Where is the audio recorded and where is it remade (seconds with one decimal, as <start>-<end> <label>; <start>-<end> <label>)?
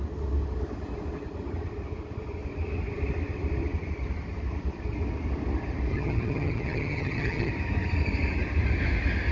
0.0-5.9 recorded; 5.9-7.5 remade; 7.5-9.3 recorded